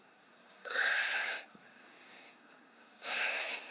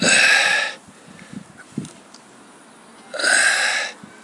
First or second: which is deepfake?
first